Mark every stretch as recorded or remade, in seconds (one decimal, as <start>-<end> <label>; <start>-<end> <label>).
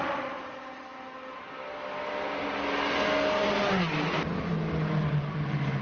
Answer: 0.0-5.8 recorded